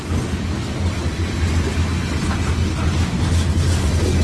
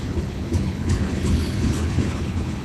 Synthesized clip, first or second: second